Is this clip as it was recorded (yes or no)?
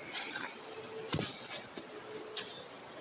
yes